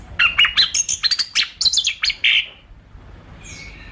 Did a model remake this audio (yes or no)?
no